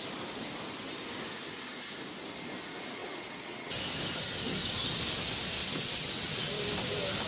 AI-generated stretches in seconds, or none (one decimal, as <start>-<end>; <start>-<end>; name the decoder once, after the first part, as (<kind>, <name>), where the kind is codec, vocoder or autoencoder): 3.0-3.8 (vocoder, WaveNeXt); 5.6-6.5